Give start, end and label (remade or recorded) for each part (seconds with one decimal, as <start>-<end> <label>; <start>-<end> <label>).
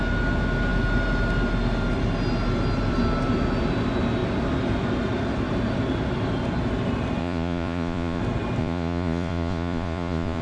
0.0-7.2 recorded; 7.2-8.2 remade; 8.2-8.6 recorded; 8.6-10.4 remade